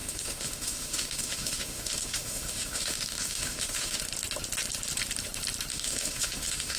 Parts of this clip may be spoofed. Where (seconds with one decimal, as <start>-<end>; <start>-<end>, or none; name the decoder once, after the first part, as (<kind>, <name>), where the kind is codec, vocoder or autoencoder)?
0.0-4.0 (autoencoder, DAC-VAE); 5.7-6.8